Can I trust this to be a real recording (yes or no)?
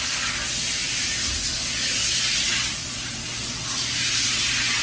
yes